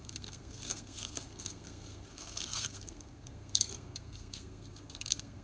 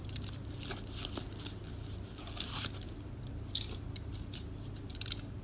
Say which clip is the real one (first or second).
second